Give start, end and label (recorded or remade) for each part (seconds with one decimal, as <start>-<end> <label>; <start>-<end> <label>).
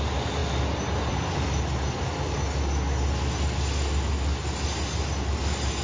0.0-5.8 recorded